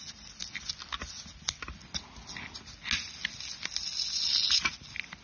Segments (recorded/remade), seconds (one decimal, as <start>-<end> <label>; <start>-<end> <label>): 0.0-5.2 recorded